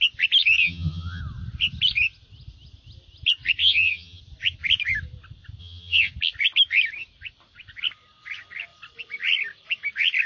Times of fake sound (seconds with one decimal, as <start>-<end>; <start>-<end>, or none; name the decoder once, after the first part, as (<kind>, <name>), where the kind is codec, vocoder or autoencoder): 0.6-1.2 (vocoder, HiFi-GAN); 3.6-4.2; 5.6-6.1